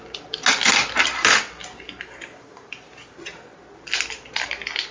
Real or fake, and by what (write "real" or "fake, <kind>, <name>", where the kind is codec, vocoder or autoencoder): real